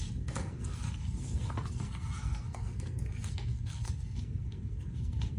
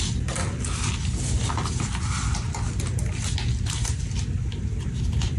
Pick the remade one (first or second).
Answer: first